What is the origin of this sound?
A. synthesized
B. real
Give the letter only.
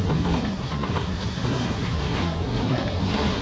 A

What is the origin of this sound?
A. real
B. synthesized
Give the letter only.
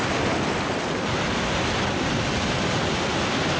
A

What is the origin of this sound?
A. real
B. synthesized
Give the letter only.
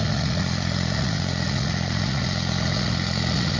B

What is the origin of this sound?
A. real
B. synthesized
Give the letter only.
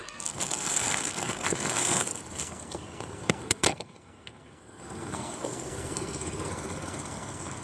B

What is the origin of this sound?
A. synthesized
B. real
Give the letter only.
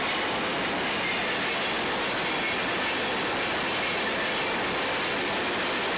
B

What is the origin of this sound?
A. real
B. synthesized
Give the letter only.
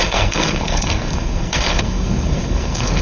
B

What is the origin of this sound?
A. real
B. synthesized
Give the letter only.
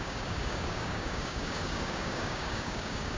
B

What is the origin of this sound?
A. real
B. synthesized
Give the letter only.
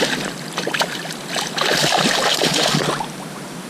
A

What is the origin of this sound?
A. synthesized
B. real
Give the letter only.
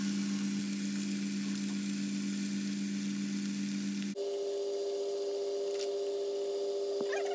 B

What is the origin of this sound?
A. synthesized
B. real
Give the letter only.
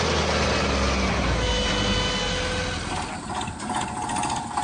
B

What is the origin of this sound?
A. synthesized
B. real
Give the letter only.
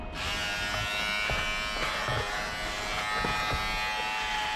B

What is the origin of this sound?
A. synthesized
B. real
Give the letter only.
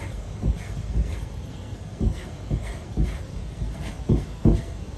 A